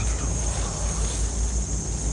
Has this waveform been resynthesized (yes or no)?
no